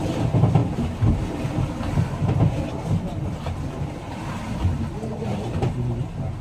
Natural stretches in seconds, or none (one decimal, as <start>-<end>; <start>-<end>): 0.0-6.4

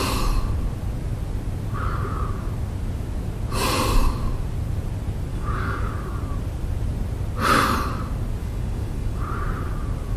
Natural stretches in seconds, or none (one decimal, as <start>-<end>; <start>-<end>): 0.0-5.3; 5.9-8.4; 9.2-10.2